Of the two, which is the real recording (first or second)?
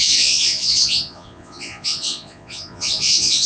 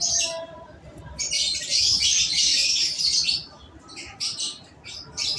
second